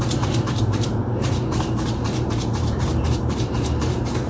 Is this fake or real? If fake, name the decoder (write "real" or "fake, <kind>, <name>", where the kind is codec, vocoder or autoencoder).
fake, vocoder, BigVGAN v2